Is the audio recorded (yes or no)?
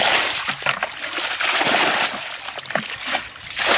yes